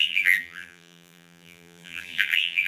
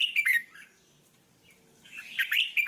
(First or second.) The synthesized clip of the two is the first